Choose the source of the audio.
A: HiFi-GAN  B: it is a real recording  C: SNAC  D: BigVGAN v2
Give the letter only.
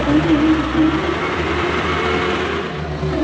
B